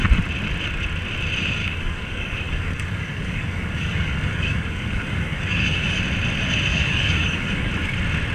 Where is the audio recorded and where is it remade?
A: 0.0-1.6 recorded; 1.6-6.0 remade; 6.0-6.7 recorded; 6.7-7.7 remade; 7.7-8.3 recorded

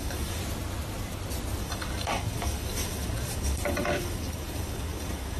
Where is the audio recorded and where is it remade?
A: 0.0-0.4 remade; 0.4-1.6 recorded; 1.6-5.4 remade